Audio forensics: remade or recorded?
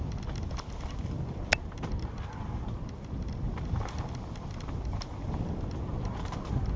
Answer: recorded